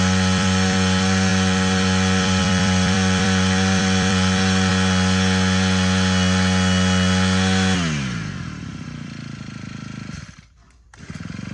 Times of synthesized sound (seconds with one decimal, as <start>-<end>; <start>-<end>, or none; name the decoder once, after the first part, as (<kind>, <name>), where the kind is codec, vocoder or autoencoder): 0.0-4.7 (vocoder, BigVGAN v2); 8.6-11.5